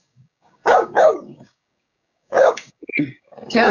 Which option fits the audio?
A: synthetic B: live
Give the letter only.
A